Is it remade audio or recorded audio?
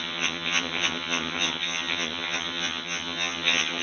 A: remade